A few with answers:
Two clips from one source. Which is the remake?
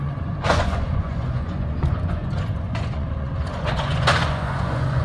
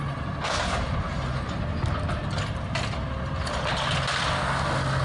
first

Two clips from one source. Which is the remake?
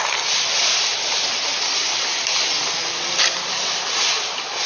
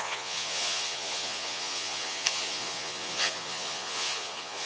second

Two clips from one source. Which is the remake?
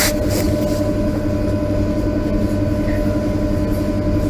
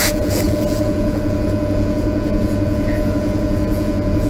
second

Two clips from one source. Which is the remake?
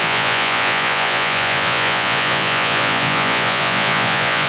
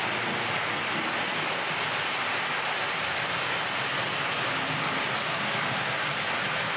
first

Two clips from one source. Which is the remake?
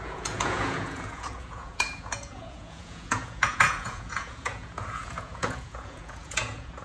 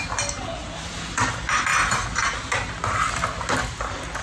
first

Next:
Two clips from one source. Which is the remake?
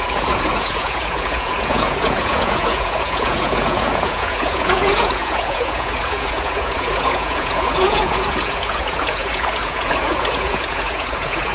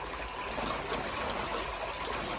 first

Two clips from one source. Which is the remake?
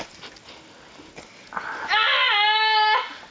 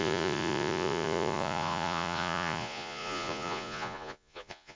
second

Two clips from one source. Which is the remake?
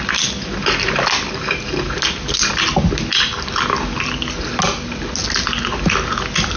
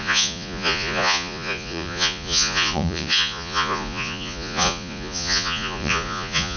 second